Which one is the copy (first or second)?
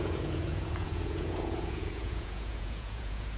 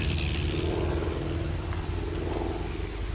first